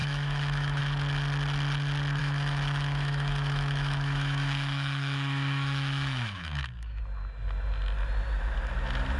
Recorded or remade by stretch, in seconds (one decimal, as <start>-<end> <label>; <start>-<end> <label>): 0.0-0.8 remade; 0.8-2.2 recorded; 2.2-7.0 remade; 7.0-9.2 recorded